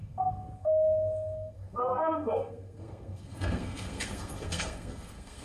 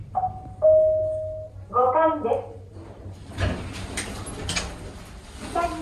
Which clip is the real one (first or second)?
second